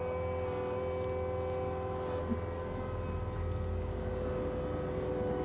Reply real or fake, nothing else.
real